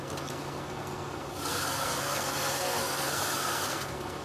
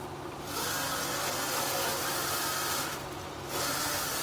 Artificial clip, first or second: first